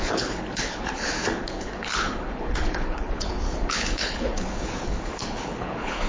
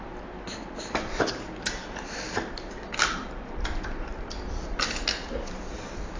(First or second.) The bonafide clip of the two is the second